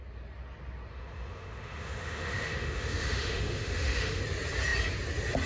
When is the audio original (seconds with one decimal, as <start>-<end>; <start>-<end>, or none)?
0.0-0.9; 4.2-5.5